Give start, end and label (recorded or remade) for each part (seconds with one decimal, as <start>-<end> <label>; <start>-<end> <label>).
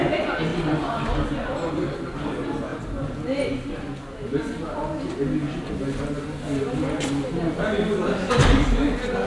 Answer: 0.0-9.3 recorded